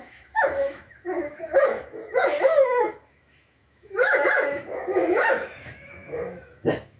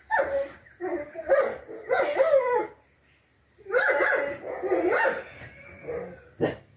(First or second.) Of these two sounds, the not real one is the first